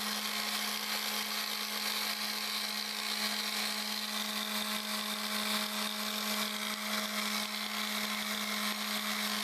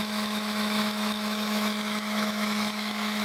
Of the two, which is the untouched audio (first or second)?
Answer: first